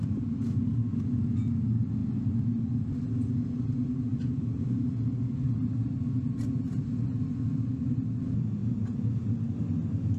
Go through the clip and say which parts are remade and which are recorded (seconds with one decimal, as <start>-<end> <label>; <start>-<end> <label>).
0.0-4.1 recorded; 4.1-5.1 remade; 5.1-8.6 recorded; 8.6-9.5 remade; 9.5-10.2 recorded